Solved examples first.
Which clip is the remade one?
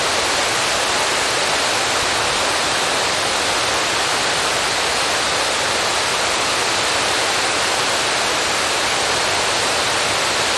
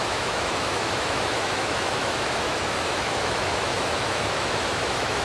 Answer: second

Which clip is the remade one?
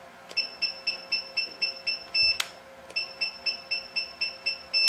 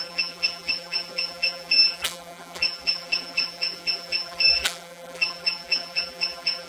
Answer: second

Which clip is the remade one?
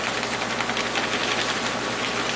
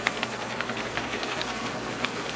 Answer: second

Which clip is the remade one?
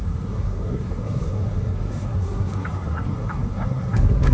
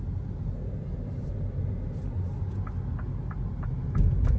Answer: first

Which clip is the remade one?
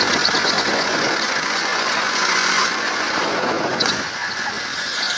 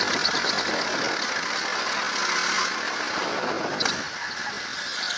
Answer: first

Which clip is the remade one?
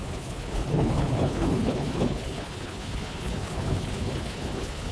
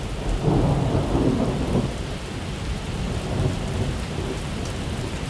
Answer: first